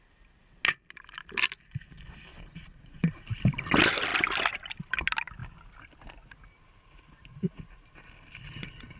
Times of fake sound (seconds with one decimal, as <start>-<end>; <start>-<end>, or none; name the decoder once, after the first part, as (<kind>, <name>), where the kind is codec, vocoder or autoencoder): 2.3-3.1 (vocoder, Vocos)